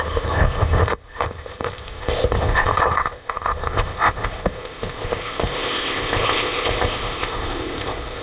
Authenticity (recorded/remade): remade